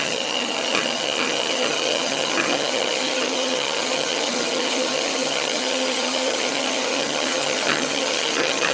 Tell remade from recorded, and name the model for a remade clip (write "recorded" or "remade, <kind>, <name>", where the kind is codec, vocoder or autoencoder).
remade, vocoder, HiFi-GAN